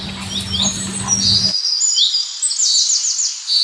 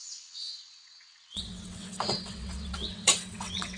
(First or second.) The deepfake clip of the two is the second